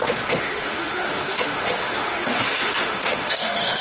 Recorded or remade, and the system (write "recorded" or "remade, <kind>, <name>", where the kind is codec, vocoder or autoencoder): remade, autoencoder, DAC-VAE